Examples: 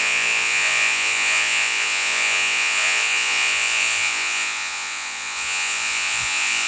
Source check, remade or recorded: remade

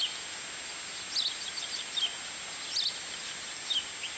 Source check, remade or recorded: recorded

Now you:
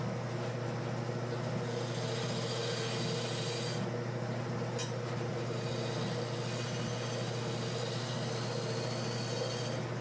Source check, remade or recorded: recorded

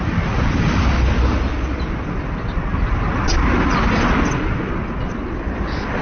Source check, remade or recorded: recorded